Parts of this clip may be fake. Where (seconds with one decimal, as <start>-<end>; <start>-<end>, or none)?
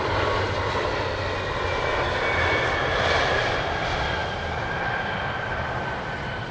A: none